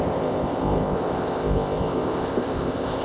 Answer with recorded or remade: remade